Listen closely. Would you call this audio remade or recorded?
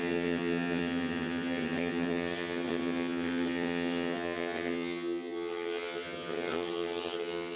remade